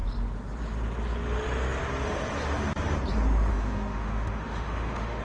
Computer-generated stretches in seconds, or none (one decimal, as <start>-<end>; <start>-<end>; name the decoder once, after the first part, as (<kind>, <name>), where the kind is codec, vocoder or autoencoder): 3.5-5.2 (autoencoder, DAC-VAE)